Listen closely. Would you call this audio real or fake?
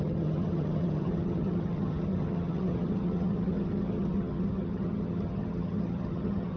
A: fake